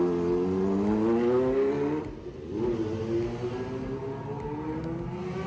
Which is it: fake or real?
real